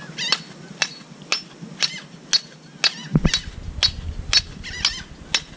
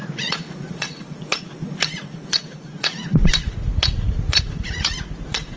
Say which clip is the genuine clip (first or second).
first